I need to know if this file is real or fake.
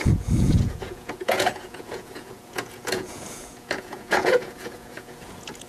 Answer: fake